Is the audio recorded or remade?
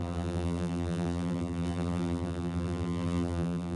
remade